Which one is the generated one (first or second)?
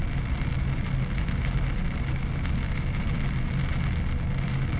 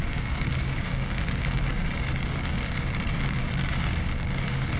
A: second